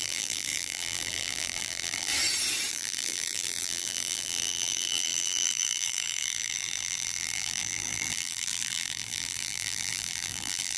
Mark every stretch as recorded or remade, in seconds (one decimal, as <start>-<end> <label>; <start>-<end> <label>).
0.0-2.1 remade; 2.1-2.7 recorded; 2.7-10.8 remade